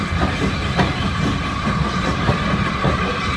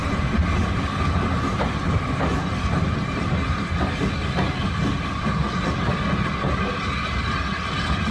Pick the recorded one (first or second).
second